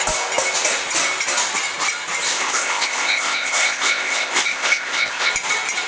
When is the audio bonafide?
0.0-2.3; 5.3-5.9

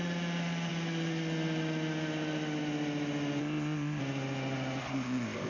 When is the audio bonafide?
0.0-3.4; 4.0-4.8

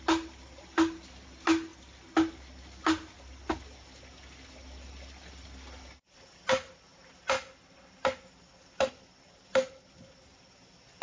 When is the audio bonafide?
0.0-11.0

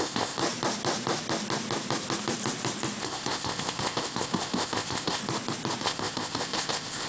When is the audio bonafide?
0.4-3.0; 5.2-5.8

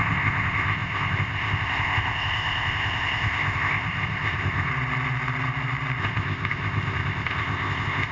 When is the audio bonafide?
4.7-6.0